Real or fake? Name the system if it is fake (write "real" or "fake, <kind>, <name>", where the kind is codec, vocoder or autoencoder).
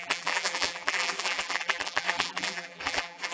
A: fake, vocoder, BigVGAN v2